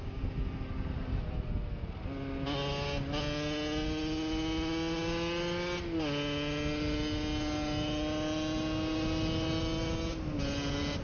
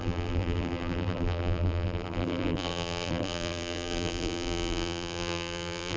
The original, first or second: first